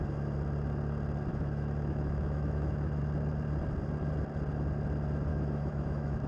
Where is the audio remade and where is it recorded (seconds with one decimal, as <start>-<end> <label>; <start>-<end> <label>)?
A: 0.0-1.3 recorded; 1.3-3.0 remade; 3.0-5.3 recorded; 5.3-6.3 remade